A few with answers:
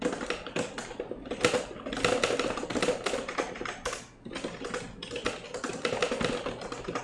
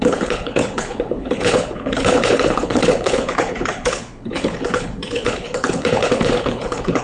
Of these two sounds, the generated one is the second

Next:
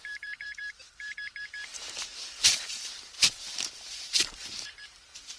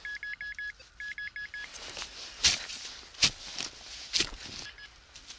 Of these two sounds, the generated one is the first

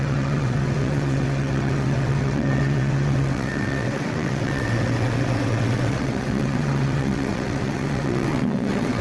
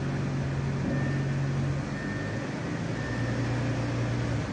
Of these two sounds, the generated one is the first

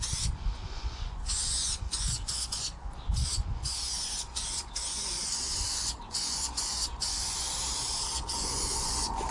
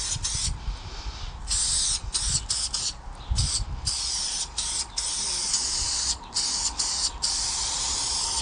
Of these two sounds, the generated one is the first